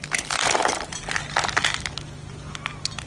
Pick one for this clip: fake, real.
real